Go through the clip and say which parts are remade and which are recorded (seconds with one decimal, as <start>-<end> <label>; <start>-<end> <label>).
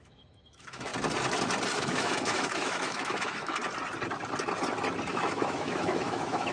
0.0-0.9 remade; 0.9-1.8 recorded; 1.8-3.6 remade; 3.6-5.1 recorded; 5.1-6.5 remade